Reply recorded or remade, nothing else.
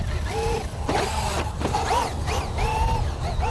recorded